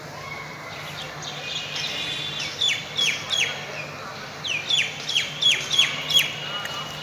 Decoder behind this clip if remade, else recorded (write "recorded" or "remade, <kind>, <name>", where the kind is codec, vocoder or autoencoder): recorded